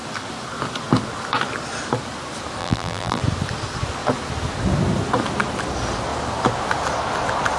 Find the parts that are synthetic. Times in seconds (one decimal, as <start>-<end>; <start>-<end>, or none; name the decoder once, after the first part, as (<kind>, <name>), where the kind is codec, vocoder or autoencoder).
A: 2.6-3.2 (vocoder, BigVGAN v2)